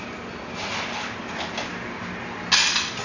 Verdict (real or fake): real